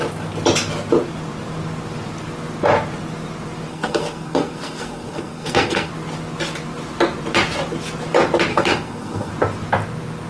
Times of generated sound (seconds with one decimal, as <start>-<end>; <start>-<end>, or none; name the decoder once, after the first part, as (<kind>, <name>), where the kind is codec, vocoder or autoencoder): 3.7-5.9 (codec, SNAC); 8.5-9.3